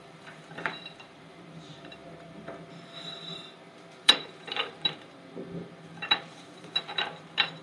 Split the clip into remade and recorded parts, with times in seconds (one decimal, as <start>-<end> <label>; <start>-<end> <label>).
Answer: 0.0-7.6 remade